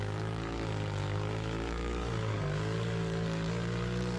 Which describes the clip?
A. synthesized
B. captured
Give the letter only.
A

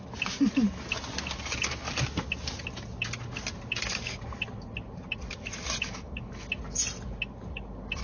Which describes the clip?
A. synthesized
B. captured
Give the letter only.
B